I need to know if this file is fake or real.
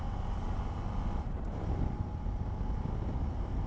real